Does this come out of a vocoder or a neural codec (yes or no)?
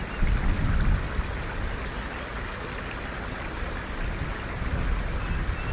no